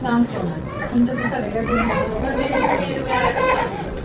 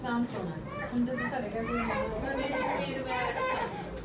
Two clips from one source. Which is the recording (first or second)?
second